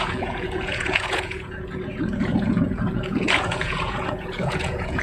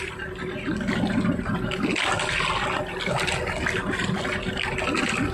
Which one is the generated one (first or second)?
first